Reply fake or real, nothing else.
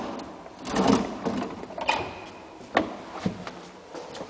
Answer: real